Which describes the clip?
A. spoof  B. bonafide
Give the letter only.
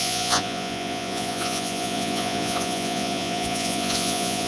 A